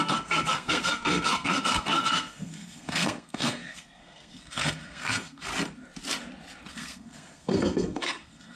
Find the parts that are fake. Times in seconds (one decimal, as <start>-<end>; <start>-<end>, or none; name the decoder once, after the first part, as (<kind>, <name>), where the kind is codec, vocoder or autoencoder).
0.0-5.5 (codec, SNAC); 6.7-8.6